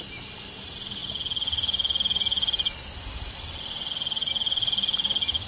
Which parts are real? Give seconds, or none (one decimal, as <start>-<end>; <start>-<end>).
0.0-5.5